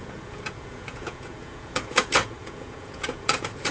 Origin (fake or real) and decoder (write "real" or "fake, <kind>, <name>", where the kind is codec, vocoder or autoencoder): fake, vocoder, Vocos